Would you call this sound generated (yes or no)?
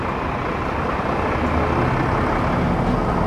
no